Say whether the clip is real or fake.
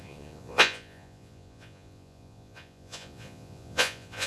fake